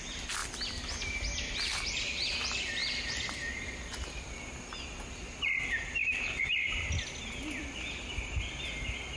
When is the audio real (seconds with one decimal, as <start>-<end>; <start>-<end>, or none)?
0.0-2.8; 4.2-6.0; 7.2-9.2